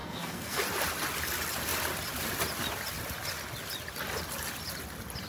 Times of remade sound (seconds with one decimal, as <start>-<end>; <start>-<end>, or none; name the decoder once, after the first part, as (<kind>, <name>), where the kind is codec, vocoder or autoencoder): 0.0-0.6 (codec, SNAC)